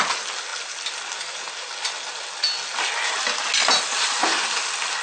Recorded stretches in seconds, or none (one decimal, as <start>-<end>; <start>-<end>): 0.0-5.0

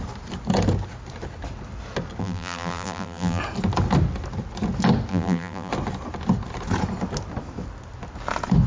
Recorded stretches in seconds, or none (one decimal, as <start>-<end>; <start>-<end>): 0.0-2.2; 3.4-5.1; 5.7-8.7